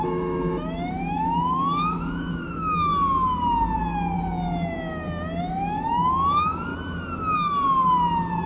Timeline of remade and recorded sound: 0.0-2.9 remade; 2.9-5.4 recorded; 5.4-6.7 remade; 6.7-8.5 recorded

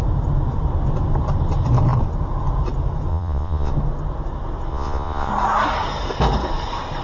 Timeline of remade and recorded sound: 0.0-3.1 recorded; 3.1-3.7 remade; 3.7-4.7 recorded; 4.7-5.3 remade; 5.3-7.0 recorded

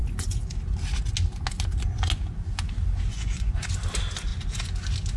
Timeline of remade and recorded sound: 0.0-3.1 recorded; 3.1-3.7 remade; 3.7-5.2 recorded

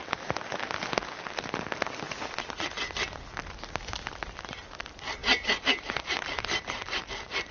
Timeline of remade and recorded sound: 0.0-4.5 recorded; 4.5-7.5 remade

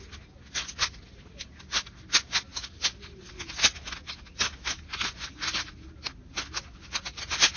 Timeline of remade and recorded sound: 0.0-7.6 recorded